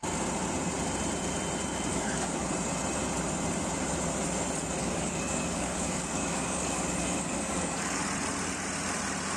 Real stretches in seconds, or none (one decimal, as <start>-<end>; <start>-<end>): 0.0-1.9; 2.5-4.8; 8.0-9.4